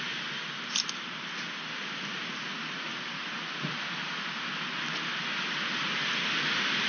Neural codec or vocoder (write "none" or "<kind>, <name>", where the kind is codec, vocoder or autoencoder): none